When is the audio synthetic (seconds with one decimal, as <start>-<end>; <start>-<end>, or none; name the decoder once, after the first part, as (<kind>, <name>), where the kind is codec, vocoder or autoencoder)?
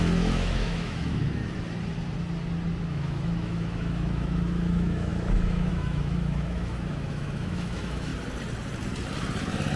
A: 0.0-1.4 (autoencoder, DAC-VAE); 2.9-8.1